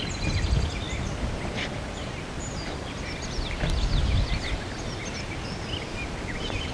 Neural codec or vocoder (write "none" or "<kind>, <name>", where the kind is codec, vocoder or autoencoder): none